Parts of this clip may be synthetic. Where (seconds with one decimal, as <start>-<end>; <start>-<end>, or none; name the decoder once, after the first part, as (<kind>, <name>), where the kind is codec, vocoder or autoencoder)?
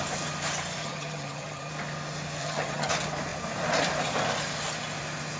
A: 0.8-1.7 (vocoder, HiFi-GAN); 2.4-2.9